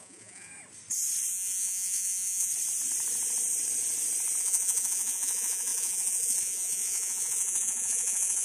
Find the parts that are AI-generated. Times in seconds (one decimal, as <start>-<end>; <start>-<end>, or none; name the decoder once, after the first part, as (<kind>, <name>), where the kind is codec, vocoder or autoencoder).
0.0-0.5 (vocoder, Vocos); 1.3-2.5; 4.4-8.4